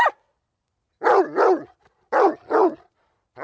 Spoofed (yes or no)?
no